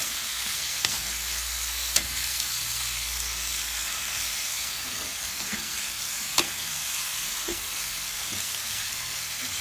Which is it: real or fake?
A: fake